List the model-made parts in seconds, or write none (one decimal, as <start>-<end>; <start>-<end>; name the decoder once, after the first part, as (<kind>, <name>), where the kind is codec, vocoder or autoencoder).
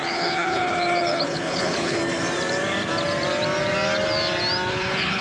0.0-2.0 (codec, HILCodec); 4.7-5.2